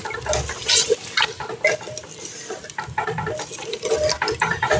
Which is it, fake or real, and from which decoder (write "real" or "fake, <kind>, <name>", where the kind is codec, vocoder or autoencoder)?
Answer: real